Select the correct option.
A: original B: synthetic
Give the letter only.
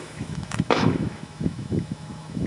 B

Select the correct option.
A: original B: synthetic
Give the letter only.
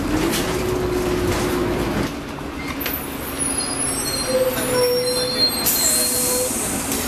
A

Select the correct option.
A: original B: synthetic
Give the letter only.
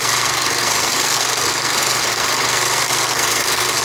B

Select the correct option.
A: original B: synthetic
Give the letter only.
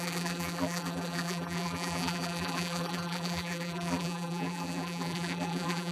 B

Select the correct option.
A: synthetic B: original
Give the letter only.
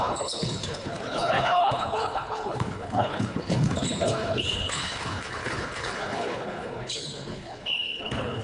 A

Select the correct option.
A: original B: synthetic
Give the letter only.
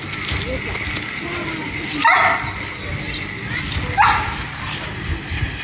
A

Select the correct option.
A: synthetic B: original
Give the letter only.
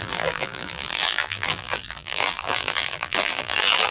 A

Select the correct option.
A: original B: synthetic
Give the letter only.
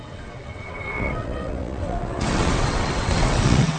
B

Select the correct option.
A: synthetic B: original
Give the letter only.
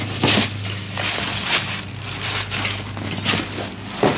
B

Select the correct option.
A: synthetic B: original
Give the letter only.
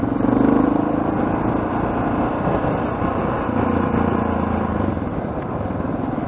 B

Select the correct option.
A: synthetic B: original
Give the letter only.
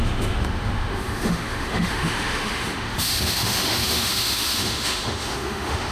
A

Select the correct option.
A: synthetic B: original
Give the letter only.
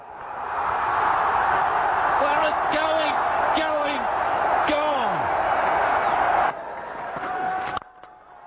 B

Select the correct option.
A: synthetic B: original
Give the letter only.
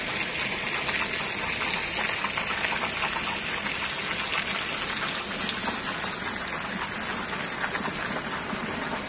B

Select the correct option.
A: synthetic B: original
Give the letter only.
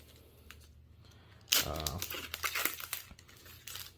B